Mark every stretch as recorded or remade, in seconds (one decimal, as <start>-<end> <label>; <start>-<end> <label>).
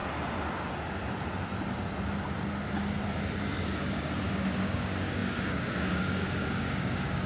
0.0-3.6 recorded; 3.6-7.3 remade